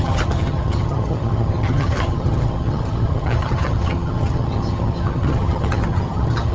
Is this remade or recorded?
remade